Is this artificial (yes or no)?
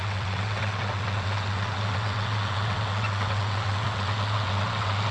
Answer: yes